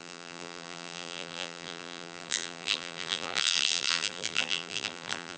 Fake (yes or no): yes